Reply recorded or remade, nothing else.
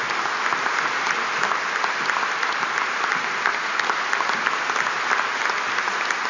recorded